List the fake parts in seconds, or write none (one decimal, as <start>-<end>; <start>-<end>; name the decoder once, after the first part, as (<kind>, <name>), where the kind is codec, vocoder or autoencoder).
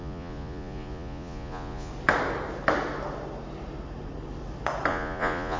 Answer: 0.0-1.9 (vocoder, Vocos); 4.9-5.6